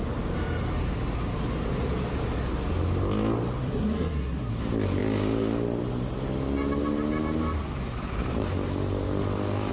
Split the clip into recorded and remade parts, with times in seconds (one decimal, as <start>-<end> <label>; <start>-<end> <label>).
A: 0.0-3.6 recorded; 3.6-4.5 remade; 4.5-9.7 recorded